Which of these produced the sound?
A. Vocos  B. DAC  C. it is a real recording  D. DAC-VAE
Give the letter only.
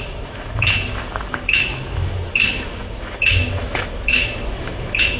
D